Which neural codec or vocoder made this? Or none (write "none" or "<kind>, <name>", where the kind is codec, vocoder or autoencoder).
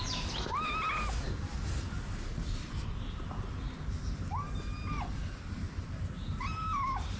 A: none